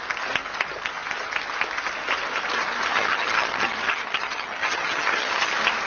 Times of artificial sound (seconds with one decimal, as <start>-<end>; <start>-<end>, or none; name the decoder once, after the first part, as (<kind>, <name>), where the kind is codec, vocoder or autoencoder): 2.9-5.5 (vocoder, HiFi-GAN)